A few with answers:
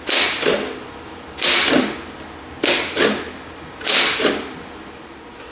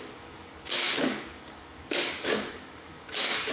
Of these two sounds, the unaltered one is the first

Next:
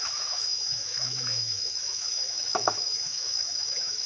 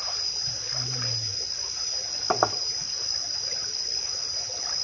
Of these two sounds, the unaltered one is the second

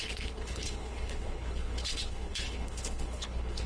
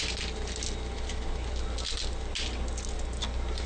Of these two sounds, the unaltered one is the second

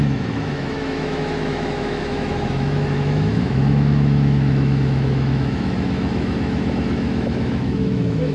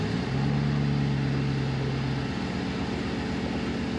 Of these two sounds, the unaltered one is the second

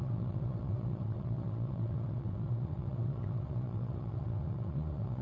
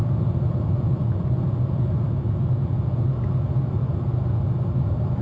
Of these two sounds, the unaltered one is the second